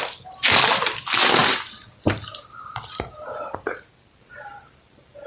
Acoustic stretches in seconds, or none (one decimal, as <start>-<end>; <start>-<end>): 0.0-5.3